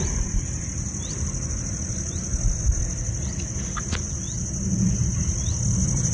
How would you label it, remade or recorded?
recorded